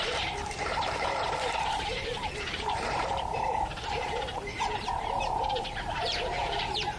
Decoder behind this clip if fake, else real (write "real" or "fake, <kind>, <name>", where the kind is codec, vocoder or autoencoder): fake, vocoder, BigVGAN v2